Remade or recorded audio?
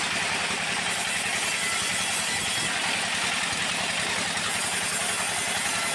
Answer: recorded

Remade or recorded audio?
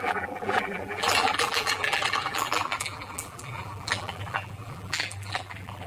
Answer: remade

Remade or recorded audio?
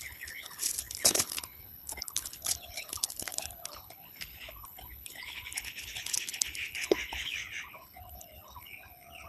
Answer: remade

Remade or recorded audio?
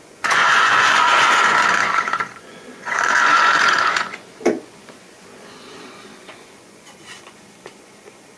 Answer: remade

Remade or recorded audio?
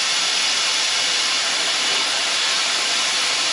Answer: recorded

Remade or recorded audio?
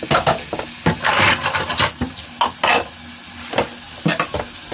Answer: recorded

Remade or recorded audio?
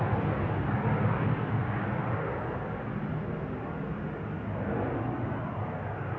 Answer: recorded